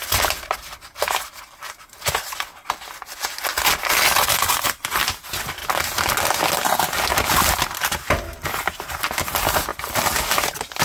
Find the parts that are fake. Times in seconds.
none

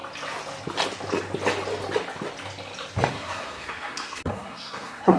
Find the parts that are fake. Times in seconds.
3.1-5.2 (codec, SNAC)

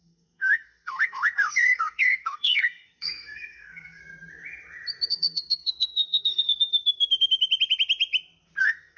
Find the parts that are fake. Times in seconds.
0.0-4.0 (codec, SNAC); 5.1-6.7; 8.6-9.0